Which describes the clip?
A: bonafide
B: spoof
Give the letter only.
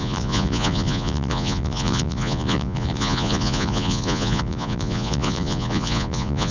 B